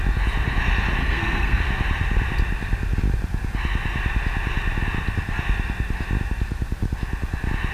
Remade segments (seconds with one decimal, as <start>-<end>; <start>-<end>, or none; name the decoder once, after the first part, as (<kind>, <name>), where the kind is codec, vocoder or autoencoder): 1.0-1.6 (codec, SNAC)